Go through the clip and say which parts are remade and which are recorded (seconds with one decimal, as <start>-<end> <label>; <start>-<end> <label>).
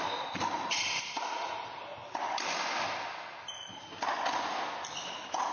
0.0-5.5 recorded